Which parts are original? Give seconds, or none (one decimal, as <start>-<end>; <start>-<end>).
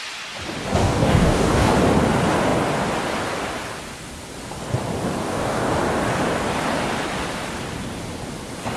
0.0-0.8; 1.7-5.2; 5.8-8.8